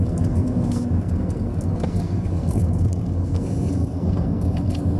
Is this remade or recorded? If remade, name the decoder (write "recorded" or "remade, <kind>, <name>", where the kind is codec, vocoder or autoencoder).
remade, codec, SNAC